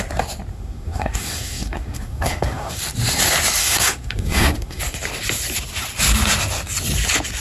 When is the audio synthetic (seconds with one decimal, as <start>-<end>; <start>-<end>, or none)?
0.5-2.8; 3.6-4.8